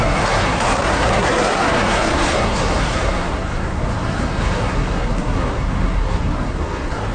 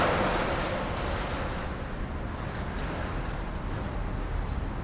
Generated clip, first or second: first